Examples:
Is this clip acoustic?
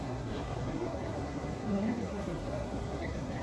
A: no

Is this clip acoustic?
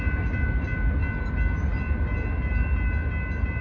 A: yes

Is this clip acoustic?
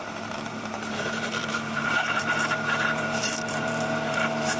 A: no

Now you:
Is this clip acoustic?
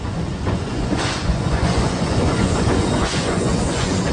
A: no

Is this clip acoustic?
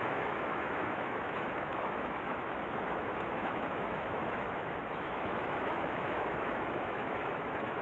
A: no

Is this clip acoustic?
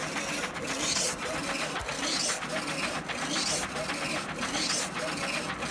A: yes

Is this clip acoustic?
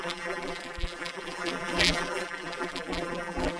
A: no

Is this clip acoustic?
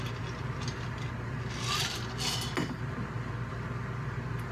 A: yes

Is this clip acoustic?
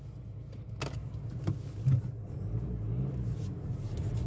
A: yes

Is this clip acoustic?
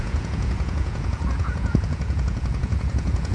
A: no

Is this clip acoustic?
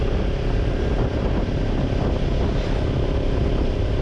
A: yes